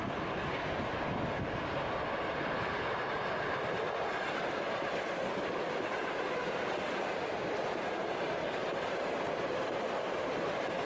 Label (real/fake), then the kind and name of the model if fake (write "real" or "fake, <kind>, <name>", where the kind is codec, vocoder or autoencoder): real